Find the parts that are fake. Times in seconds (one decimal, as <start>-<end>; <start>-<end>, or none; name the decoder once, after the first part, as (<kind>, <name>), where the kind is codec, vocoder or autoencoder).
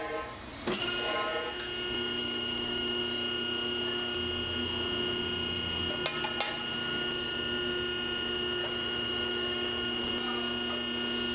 2.2-3.0 (autoencoder, DAC-VAE); 8.6-10.1